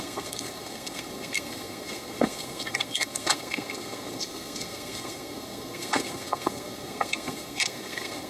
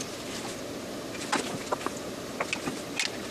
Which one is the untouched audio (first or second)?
second